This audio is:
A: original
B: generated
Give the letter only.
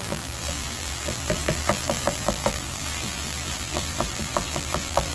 B